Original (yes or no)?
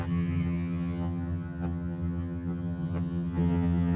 no